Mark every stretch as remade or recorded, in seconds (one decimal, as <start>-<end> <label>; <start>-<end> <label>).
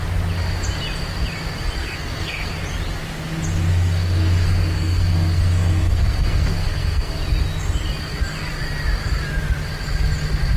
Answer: 0.0-1.8 recorded; 1.8-2.5 remade; 2.5-3.7 recorded; 3.7-7.1 remade; 7.1-10.6 recorded